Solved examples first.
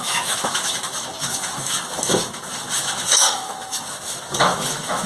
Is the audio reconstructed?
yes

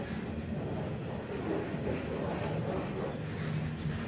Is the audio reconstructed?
no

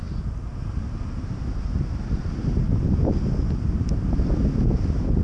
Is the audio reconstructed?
no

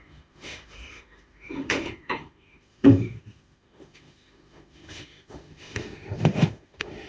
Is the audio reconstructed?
yes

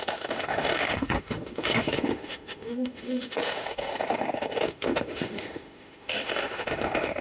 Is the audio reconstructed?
yes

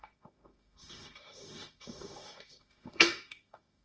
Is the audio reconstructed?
yes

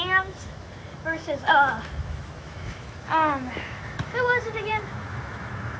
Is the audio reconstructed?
yes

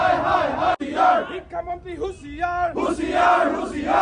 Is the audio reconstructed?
no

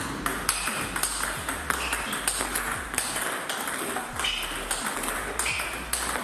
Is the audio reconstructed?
no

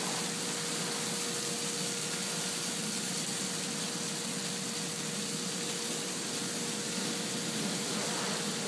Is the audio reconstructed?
no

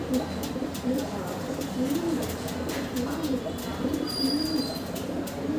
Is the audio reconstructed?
no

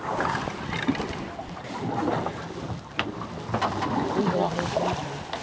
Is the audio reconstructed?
no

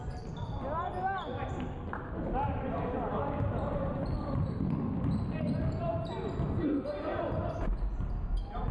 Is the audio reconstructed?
no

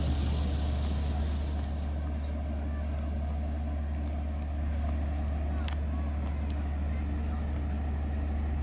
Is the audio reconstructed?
no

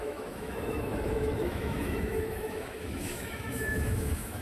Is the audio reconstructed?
yes